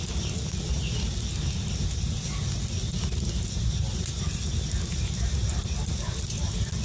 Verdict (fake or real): real